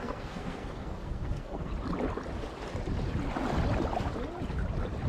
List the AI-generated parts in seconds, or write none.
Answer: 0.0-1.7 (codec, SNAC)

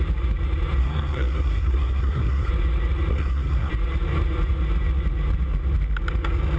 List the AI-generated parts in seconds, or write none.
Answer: 0.8-2.5 (codec, SNAC); 3.1-3.7

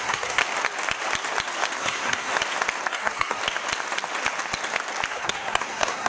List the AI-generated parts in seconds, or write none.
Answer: 0.0-0.4 (codec, SNAC); 1.8-2.3; 2.9-3.4; 5.1-6.1

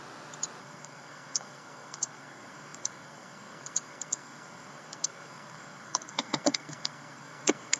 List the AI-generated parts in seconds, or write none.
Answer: 0.6-7.8 (codec, SNAC)

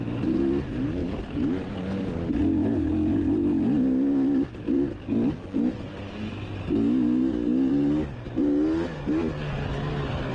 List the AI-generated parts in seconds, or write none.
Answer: none

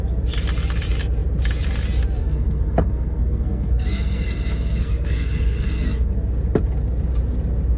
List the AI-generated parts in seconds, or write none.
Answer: 2.2-6.1 (codec, SNAC)

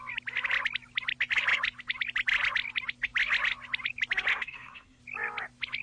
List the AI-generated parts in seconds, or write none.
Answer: 4.3-5.0 (codec, SNAC)

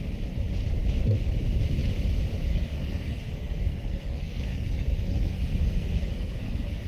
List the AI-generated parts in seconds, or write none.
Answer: 2.5-6.9 (codec, SNAC)